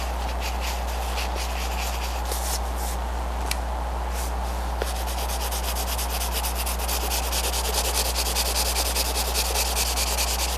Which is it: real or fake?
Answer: real